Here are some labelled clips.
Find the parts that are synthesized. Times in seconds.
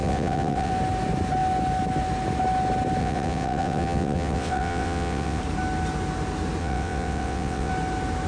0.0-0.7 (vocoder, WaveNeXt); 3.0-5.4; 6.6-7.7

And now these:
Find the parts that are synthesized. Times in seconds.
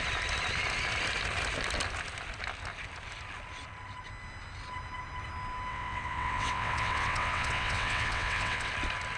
5.7-8.7 (vocoder, WaveNeXt)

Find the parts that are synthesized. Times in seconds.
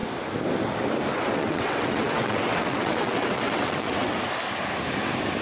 1.4-4.1 (vocoder, WaveNeXt)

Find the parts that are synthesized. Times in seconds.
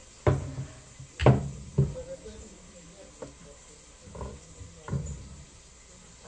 none